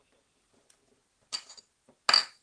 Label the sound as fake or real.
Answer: real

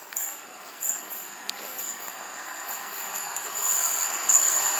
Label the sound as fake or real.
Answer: fake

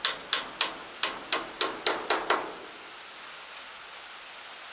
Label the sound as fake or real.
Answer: real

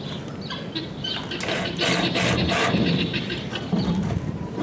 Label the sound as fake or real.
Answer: real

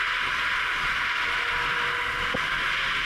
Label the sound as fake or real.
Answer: real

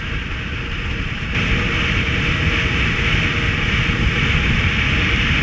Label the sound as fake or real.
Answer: real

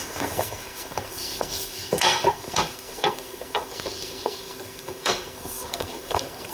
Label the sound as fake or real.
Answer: fake